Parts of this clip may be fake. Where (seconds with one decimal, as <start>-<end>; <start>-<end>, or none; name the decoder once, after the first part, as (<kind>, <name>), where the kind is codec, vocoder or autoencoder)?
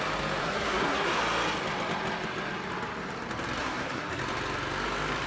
0.4-1.2 (codec, SNAC); 3.6-4.2